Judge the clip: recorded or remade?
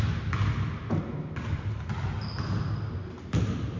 recorded